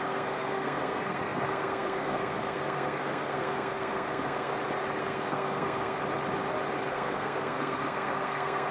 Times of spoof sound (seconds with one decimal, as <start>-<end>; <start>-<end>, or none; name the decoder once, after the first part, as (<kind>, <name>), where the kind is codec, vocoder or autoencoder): 0.0-4.5 (codec, SNAC); 5.0-6.0; 6.9-8.7